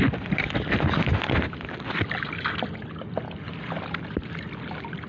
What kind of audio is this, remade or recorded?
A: recorded